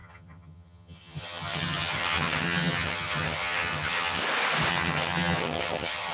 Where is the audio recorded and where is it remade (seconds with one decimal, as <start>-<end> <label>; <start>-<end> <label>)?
0.0-4.2 remade; 4.2-4.7 recorded; 4.7-6.1 remade